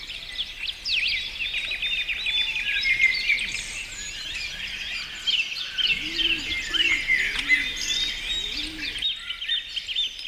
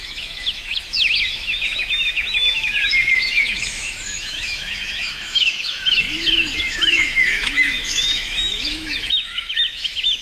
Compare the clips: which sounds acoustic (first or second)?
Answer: first